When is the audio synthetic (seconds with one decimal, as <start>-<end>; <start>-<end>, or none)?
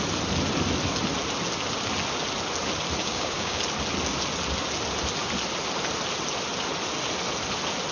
3.0-3.6